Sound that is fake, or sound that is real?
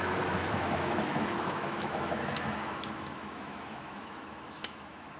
fake